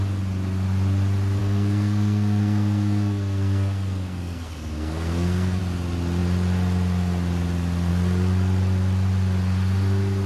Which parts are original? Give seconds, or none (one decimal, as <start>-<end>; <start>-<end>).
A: 0.0-1.4; 5.6-10.3